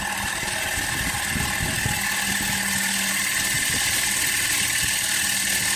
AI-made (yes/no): no